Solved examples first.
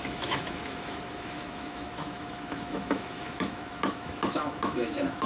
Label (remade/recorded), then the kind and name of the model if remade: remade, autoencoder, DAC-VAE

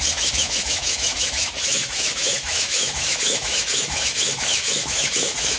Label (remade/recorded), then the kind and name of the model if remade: remade, autoencoder, DAC-VAE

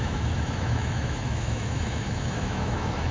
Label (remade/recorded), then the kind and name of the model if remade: remade, autoencoder, DAC-VAE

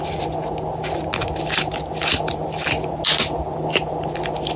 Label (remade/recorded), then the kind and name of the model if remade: recorded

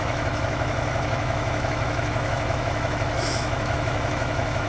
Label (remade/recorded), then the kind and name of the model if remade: remade, autoencoder, DAC-VAE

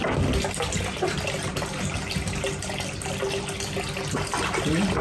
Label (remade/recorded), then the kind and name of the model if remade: recorded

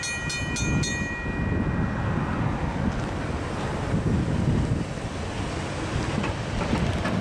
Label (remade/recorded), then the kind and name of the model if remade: recorded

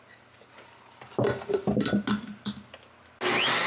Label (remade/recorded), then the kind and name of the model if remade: recorded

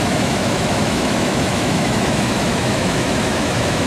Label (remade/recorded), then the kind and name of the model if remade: remade, autoencoder, DAC-VAE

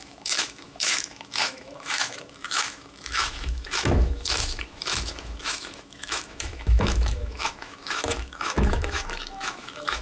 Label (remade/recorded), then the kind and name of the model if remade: remade, autoencoder, DAC-VAE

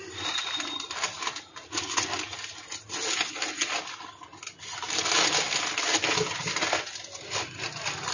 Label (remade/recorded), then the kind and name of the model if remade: recorded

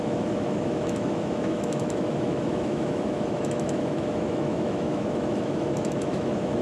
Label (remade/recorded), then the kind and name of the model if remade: remade, autoencoder, DAC-VAE